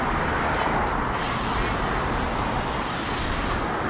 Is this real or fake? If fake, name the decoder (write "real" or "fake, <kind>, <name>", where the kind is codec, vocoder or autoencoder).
real